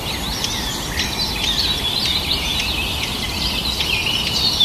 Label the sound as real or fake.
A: real